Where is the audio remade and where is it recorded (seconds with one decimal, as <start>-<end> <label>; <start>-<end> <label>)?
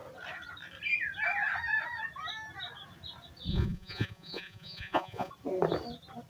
0.0-3.5 recorded; 3.5-5.3 remade; 5.3-6.3 recorded